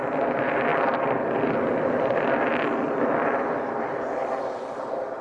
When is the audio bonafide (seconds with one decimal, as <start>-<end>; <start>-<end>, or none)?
0.0-5.2